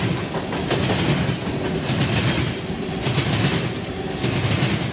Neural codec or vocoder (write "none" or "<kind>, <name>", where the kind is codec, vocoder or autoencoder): none